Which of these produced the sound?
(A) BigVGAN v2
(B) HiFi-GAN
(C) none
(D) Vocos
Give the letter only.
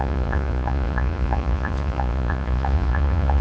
D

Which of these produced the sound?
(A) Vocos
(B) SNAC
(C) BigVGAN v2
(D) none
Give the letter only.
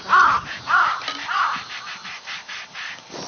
D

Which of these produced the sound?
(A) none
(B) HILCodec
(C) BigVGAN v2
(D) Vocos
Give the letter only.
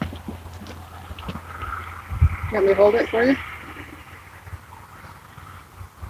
A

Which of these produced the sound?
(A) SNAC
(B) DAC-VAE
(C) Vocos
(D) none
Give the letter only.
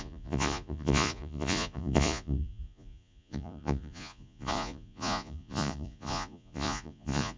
C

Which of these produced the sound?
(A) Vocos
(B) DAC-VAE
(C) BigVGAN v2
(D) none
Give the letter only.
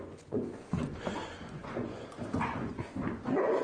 A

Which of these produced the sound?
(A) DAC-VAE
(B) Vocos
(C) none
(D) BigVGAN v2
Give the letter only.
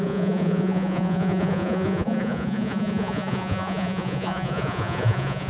B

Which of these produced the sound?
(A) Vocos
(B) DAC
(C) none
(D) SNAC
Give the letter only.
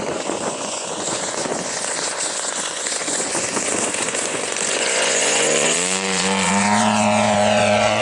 A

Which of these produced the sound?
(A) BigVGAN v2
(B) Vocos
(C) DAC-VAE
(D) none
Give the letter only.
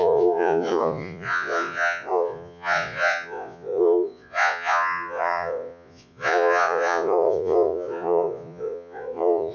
B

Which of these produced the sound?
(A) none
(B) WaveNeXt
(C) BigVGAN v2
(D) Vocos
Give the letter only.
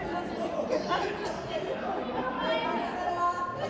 A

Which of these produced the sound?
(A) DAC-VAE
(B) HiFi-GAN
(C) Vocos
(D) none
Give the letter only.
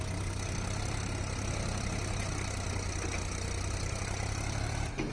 D